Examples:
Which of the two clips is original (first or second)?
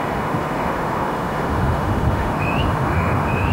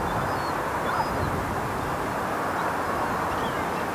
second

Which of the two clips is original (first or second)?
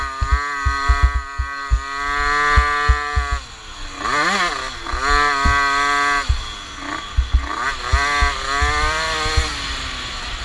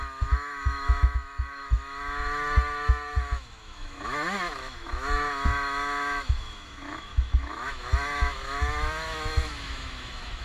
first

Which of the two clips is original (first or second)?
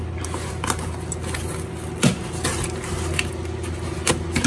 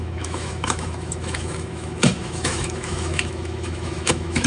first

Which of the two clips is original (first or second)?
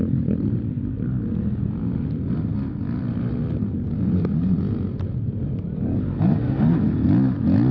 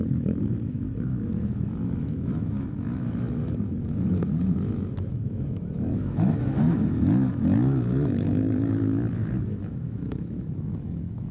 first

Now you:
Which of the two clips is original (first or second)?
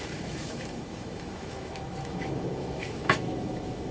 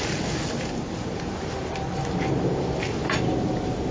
second